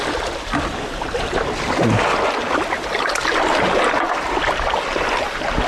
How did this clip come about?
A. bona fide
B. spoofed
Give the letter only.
A